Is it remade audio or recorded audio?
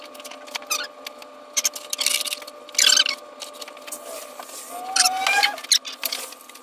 recorded